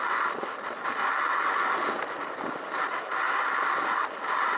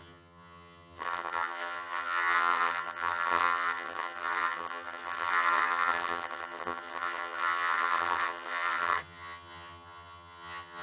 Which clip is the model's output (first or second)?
second